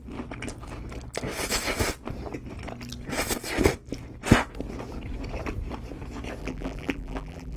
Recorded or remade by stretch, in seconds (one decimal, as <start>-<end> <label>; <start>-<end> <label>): 0.0-6.4 recorded; 6.4-7.6 remade

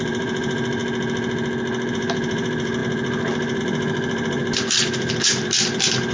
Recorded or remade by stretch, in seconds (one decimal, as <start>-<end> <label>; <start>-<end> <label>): 0.0-0.8 remade; 0.8-1.9 recorded; 1.9-6.1 remade

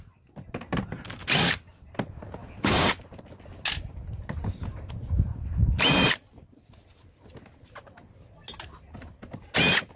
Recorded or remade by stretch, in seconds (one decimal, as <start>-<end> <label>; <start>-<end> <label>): 0.0-2.4 recorded; 2.4-3.2 remade; 3.2-10.0 recorded

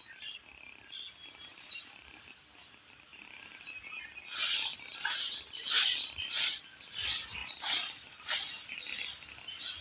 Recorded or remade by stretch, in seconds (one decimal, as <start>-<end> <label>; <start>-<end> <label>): 0.0-1.5 recorded; 1.5-2.2 remade; 2.2-3.1 recorded; 3.1-4.0 remade; 4.0-4.7 recorded; 4.7-5.2 remade; 5.2-7.4 recorded; 7.4-8.3 remade; 8.3-9.8 recorded

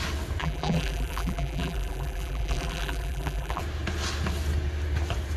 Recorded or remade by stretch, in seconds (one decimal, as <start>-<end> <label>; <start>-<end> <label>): 0.0-0.4 recorded; 0.4-3.6 remade; 3.6-5.4 recorded

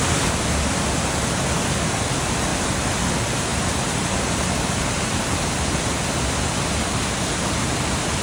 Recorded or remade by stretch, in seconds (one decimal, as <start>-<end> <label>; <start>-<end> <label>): 0.0-3.5 recorded; 3.5-5.8 remade; 5.8-8.2 recorded